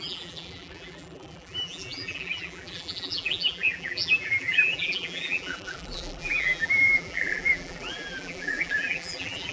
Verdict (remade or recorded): remade